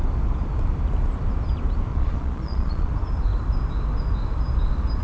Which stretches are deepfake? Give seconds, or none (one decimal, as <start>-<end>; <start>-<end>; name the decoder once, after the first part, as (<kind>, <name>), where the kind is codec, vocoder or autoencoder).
1.9-2.9 (vocoder, Vocos)